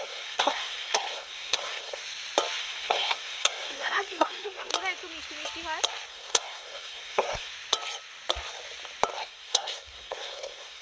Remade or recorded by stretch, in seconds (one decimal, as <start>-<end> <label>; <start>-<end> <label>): 0.0-2.0 remade; 2.0-2.6 recorded; 2.6-4.7 remade; 4.7-6.1 recorded; 6.1-7.5 remade; 7.5-9.2 recorded; 9.2-10.8 remade